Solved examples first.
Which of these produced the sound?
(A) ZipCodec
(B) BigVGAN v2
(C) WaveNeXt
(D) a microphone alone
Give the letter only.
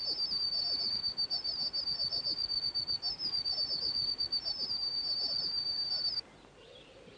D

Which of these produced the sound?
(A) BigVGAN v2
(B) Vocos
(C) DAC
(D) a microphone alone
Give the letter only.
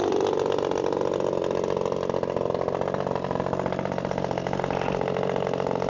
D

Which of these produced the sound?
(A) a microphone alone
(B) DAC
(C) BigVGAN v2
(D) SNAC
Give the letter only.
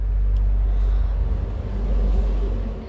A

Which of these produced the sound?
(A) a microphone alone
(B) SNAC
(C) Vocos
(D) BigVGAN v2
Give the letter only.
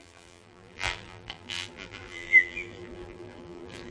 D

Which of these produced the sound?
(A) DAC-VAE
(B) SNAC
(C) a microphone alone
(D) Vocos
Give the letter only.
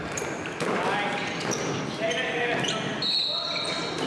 C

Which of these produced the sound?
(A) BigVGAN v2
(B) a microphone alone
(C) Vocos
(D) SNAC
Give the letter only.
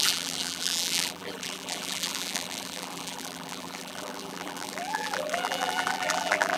A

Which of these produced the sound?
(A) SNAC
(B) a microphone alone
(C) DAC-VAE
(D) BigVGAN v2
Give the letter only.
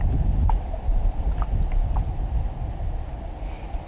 B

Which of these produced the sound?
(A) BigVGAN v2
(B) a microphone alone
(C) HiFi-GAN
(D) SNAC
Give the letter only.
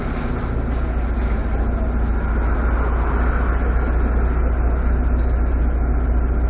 B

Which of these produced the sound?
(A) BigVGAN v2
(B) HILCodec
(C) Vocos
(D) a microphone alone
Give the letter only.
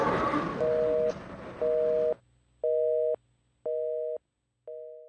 D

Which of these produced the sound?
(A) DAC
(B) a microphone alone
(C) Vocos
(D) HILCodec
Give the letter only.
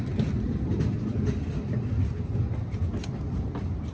B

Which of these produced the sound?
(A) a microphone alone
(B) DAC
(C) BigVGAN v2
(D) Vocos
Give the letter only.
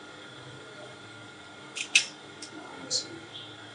B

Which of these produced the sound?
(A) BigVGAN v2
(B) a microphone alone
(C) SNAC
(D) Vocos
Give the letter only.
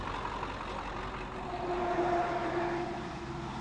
B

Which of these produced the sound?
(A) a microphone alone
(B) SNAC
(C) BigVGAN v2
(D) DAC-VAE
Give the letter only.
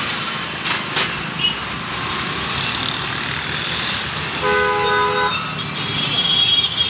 A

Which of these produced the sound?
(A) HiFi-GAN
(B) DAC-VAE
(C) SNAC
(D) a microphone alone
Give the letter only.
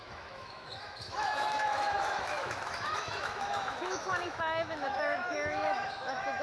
B